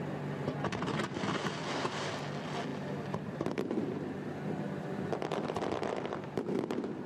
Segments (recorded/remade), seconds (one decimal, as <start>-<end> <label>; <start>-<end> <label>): 0.0-7.1 recorded